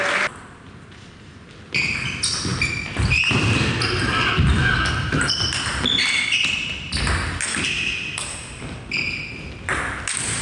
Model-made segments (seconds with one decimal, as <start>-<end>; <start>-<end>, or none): none